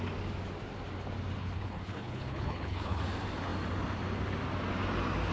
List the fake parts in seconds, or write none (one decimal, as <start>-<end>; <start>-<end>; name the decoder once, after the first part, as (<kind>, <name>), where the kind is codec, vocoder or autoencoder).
1.4-3.0 (codec, HILCodec)